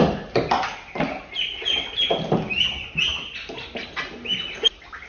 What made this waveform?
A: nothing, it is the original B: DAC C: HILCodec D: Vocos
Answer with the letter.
A